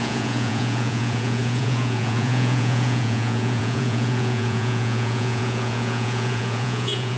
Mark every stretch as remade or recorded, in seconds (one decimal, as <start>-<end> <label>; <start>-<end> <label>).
0.0-7.2 remade